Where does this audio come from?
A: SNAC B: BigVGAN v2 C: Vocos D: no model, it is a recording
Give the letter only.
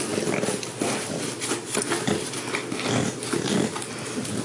D